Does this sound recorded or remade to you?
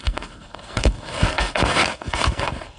remade